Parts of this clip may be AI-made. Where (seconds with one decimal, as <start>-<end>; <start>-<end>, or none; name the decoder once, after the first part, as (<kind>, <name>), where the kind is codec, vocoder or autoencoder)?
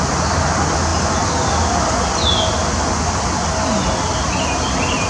none